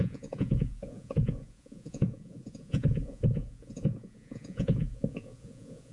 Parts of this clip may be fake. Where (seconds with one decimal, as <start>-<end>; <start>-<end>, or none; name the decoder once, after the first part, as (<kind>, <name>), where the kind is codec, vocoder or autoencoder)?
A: 0.0-5.9 (vocoder, Vocos)